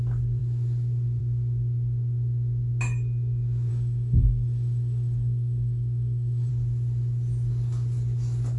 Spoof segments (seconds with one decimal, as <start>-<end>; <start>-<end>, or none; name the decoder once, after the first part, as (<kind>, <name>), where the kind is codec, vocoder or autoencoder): 3.7-6.5 (codec, DAC)